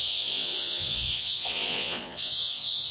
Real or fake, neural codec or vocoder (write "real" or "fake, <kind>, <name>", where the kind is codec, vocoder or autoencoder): fake, vocoder, Vocos